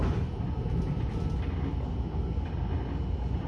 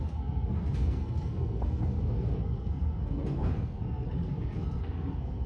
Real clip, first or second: first